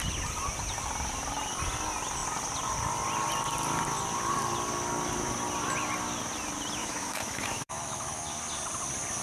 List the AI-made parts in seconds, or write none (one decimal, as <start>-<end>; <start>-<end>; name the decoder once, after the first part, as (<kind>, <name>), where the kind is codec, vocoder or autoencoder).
6.8-8.2 (autoencoder, DAC-VAE)